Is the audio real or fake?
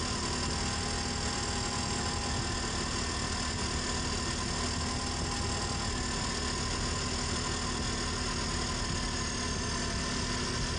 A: real